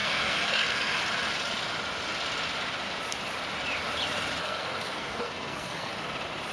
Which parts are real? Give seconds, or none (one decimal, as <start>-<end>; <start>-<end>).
1.0-4.4; 5.9-6.5